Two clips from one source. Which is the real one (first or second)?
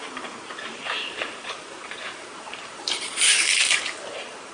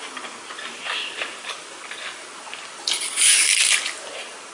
second